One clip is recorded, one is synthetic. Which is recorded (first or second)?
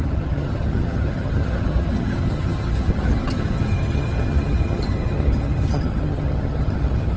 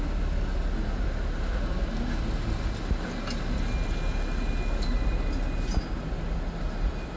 second